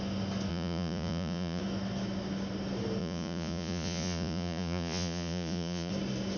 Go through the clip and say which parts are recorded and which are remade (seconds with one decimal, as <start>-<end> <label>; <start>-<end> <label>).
0.0-0.5 recorded; 0.5-1.6 remade; 1.6-3.0 recorded; 3.0-5.9 remade; 5.9-6.4 recorded